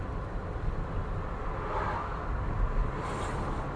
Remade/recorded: recorded